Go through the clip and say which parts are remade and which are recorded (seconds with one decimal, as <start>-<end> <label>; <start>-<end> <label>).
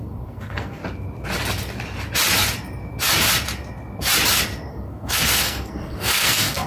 0.0-0.8 remade; 0.8-4.7 recorded; 4.7-6.7 remade